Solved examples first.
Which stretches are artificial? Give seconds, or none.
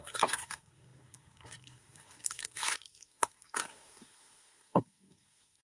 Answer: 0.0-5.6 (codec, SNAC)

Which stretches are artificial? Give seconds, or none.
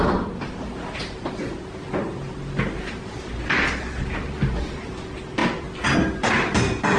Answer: none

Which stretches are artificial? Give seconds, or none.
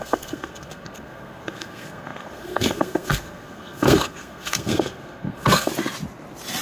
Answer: 0.0-5.7 (codec, SNAC)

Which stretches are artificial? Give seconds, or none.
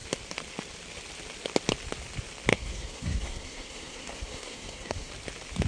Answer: 2.5-5.1 (codec, SNAC)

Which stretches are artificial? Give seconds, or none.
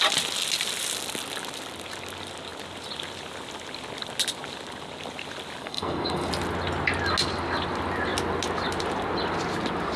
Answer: 5.6-6.3 (codec, SNAC)